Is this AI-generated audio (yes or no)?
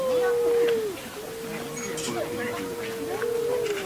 no